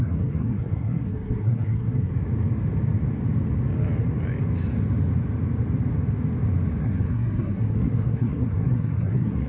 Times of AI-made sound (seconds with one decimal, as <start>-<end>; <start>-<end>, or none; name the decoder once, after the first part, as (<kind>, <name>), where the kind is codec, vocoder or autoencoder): 0.0-2.1 (codec, SNAC); 6.8-9.5